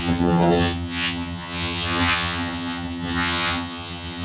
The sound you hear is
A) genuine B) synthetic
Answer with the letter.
B